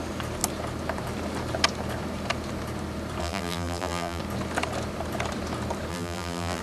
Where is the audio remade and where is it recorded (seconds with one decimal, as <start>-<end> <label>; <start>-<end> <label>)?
0.0-3.2 recorded; 3.2-4.2 remade; 4.2-5.9 recorded; 5.9-6.6 remade